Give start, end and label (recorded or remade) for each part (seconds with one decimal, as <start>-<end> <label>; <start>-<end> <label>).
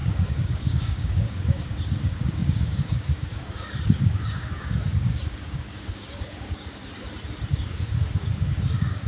0.0-6.8 remade; 6.8-7.5 recorded; 7.5-9.1 remade